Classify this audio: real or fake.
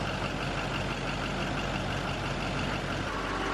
real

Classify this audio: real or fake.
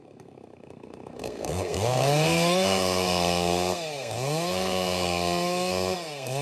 fake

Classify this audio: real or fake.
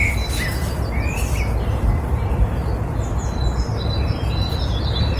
real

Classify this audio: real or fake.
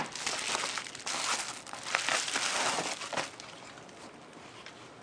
real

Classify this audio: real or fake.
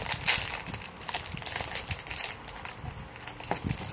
real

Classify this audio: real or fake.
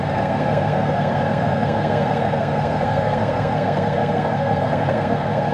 fake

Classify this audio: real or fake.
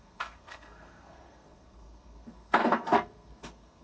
fake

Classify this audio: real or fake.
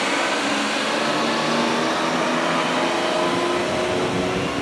real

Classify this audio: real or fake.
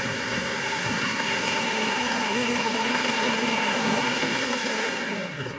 fake